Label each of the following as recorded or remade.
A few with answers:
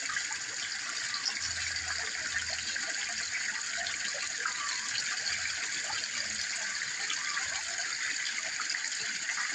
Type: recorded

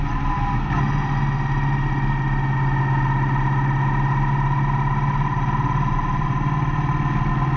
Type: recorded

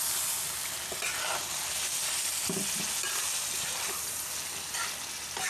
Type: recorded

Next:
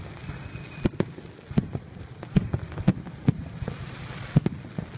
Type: recorded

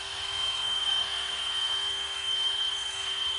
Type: remade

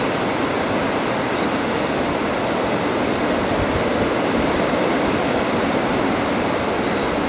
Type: recorded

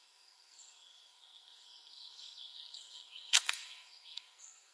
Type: remade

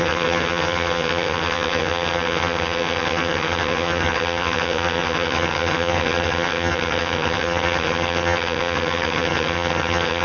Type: remade